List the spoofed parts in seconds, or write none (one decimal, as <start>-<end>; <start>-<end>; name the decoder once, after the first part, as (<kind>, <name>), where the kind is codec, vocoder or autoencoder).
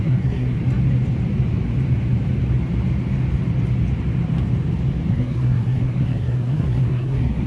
0.0-0.6 (codec, SNAC); 5.1-7.5